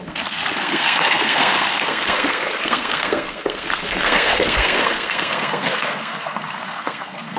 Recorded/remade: remade